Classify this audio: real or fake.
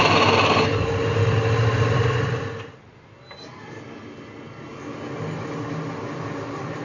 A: real